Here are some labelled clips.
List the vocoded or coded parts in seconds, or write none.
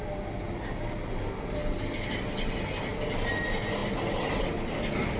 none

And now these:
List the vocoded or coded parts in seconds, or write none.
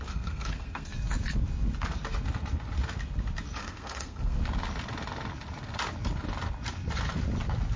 0.0-0.9 (codec, SNAC); 3.6-4.4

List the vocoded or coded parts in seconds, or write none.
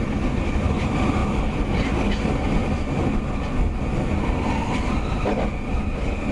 none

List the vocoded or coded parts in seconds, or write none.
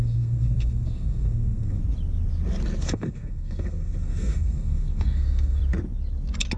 0.0-1.8 (codec, SNAC); 2.8-5.6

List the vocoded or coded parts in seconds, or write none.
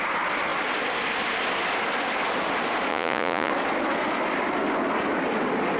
2.9-3.5 (vocoder, Vocos)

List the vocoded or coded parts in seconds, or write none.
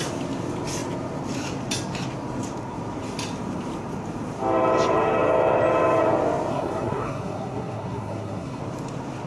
6.5-8.6 (codec, SNAC)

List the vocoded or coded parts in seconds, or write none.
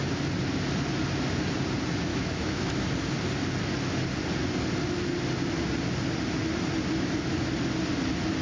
2.1-2.7 (autoencoder, DAC-VAE)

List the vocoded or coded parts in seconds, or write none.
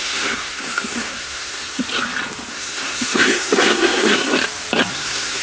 0.0-1.8 (codec, SNAC); 2.5-4.3; 4.9-5.4